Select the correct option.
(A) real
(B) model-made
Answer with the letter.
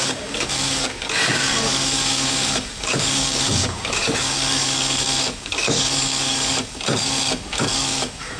B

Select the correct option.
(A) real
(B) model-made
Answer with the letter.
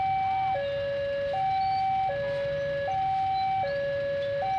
A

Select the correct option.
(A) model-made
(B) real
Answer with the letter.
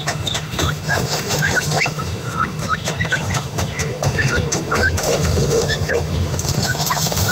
A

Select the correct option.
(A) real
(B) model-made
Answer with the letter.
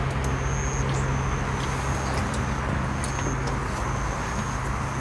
A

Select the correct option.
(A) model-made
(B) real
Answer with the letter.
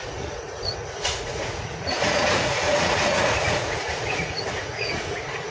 A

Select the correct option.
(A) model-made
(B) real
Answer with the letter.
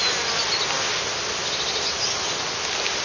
B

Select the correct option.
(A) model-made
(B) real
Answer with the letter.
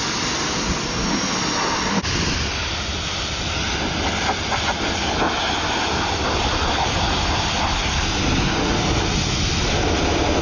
B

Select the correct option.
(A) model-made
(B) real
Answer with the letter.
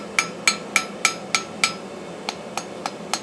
B